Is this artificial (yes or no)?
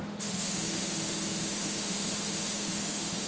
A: yes